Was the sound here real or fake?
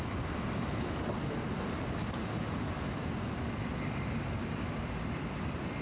real